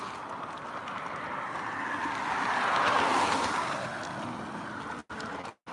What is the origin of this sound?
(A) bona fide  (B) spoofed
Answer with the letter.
A